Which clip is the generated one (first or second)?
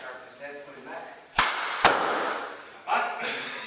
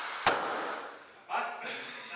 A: first